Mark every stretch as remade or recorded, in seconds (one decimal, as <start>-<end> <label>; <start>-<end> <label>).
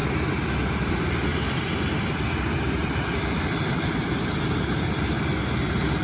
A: 0.0-6.0 recorded